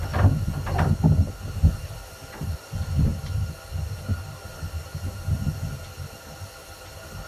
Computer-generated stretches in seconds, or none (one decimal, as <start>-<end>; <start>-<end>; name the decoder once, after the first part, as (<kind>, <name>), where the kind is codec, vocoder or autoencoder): none